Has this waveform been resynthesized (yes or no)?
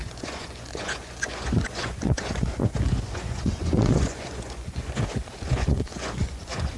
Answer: yes